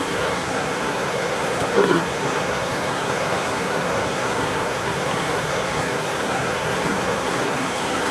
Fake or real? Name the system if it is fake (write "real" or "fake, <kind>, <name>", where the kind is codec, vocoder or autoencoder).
fake, codec, SNAC